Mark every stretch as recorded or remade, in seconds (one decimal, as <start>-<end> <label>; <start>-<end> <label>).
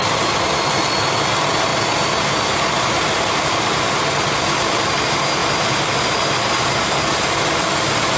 0.0-8.2 recorded